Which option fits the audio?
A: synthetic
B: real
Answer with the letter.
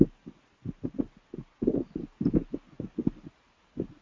B